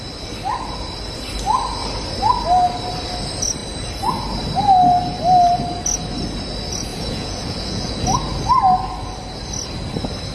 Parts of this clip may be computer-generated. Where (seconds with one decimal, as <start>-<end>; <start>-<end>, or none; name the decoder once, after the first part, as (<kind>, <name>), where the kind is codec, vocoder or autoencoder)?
6.9-8.0 (vocoder, Vocos)